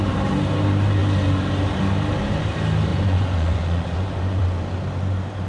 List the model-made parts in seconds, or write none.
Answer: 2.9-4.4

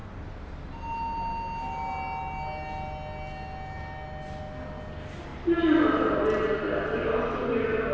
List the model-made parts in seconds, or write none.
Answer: none

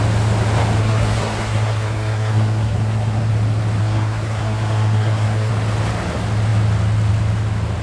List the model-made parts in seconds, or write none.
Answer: 0.8-3.3; 3.8-5.5

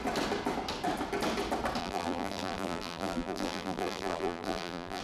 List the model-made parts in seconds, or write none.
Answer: 1.8-5.0

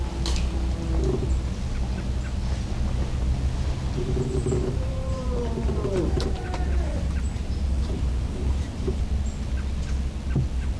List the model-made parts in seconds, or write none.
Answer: 4.0-9.0

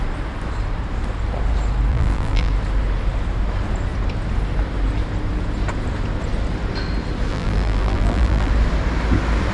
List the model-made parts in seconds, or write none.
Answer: 1.9-2.5; 7.3-8.5

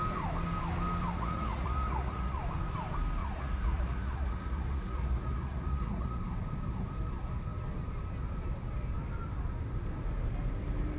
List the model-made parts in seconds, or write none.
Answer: 1.1-2.4; 3.2-6.2